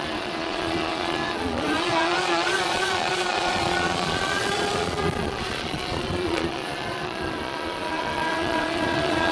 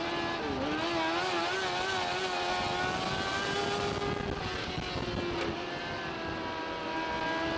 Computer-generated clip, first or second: first